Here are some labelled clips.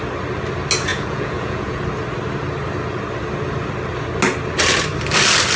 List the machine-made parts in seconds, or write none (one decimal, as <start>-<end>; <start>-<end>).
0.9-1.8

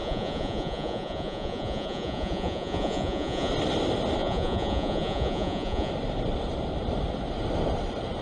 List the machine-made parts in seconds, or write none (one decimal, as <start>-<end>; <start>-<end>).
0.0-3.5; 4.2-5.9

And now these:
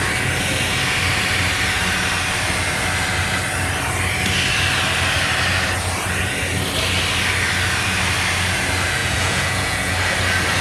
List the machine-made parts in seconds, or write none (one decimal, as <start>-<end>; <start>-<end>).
9.0-9.9

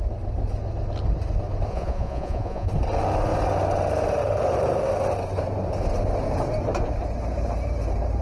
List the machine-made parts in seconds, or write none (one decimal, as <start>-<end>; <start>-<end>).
1.7-2.7

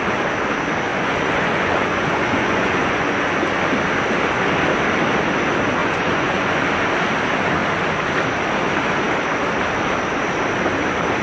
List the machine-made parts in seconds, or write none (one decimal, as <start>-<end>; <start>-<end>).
0.9-3.2; 5.8-6.6

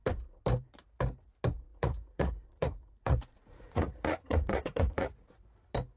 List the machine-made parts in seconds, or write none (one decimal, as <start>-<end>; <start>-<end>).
1.7-5.3